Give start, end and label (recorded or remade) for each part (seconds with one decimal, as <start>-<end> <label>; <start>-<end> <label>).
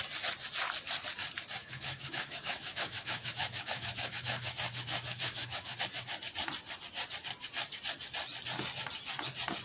0.0-1.6 recorded; 1.6-5.8 remade; 5.8-9.6 recorded